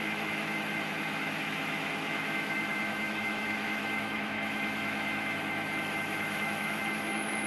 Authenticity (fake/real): fake